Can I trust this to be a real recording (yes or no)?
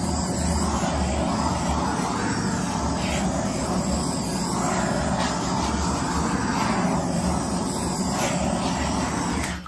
yes